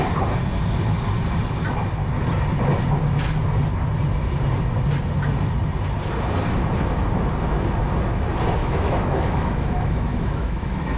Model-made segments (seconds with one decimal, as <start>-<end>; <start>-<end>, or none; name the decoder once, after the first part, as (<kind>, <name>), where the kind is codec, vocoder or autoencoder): 8.6-11.0 (autoencoder, DAC-VAE)